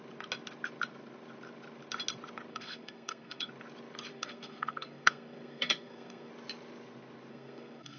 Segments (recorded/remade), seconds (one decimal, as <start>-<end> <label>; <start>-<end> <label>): 0.0-2.5 recorded; 2.5-3.5 remade; 3.5-4.1 recorded; 4.1-6.3 remade; 6.3-7.3 recorded; 7.3-8.0 remade